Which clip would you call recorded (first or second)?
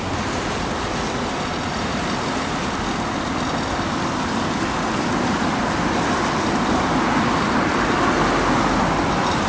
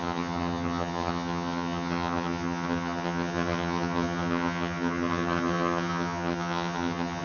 first